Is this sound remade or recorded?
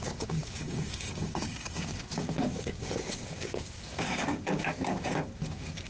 remade